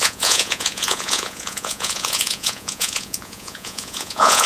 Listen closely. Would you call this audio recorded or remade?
remade